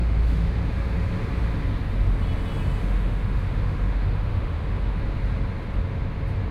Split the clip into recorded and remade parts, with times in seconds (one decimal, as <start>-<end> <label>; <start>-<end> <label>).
0.0-0.6 remade; 0.6-2.8 recorded; 2.8-5.0 remade; 5.0-6.5 recorded